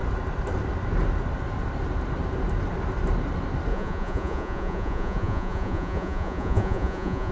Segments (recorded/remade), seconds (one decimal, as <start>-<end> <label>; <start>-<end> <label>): 0.0-3.7 recorded; 3.7-7.3 remade